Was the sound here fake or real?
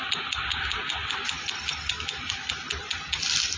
real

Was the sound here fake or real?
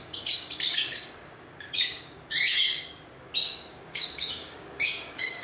fake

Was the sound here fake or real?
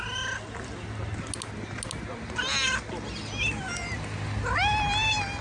real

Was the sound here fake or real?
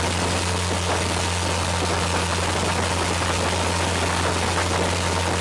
real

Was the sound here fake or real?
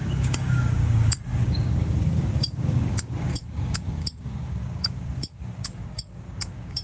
fake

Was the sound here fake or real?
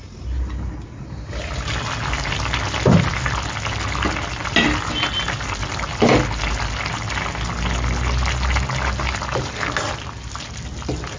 real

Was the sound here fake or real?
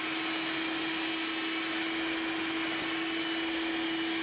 real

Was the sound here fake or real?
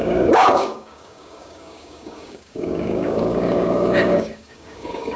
fake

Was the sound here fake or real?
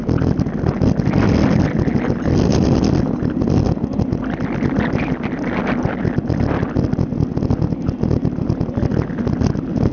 real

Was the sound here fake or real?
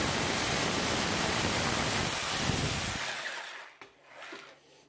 real